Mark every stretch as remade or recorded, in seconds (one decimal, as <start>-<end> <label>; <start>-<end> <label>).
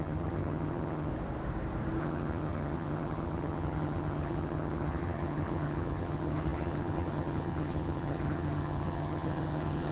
0.0-1.1 remade; 1.1-2.0 recorded; 2.0-9.9 remade